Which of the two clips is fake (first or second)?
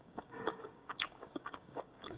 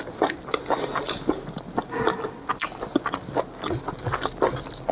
first